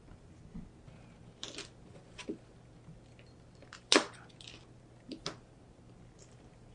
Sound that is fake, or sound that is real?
real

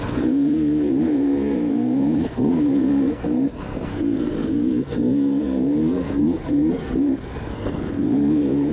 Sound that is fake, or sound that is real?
fake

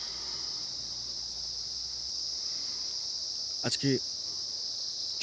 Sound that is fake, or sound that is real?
real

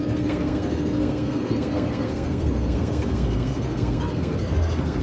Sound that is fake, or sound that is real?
fake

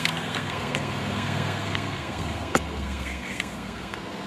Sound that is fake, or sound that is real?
fake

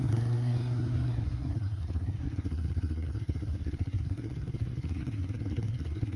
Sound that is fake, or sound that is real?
fake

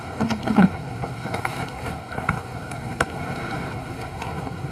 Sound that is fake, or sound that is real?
fake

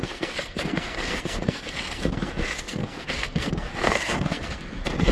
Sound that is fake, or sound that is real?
fake